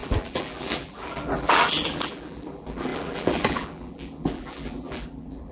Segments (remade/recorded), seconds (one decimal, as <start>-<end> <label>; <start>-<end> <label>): 0.0-5.5 remade